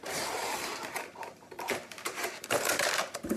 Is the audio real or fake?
fake